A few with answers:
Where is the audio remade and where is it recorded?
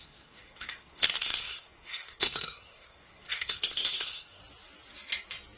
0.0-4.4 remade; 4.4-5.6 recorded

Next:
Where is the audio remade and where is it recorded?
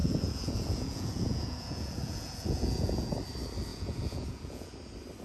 0.0-3.1 remade; 3.1-3.7 recorded; 3.7-4.7 remade; 4.7-5.2 recorded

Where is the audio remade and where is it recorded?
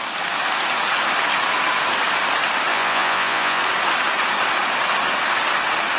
0.0-2.7 recorded; 2.7-3.6 remade; 3.6-6.0 recorded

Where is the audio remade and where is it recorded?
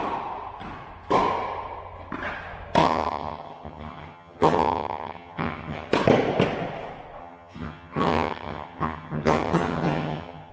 0.0-2.8 recorded; 2.8-5.9 remade; 5.9-7.2 recorded; 7.2-10.5 remade